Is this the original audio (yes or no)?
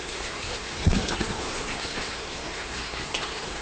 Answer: no